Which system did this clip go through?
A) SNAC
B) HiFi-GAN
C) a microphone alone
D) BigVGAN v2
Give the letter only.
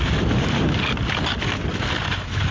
C